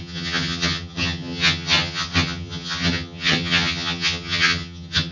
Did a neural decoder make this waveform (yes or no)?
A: yes